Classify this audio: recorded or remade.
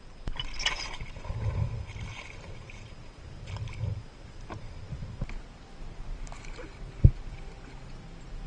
recorded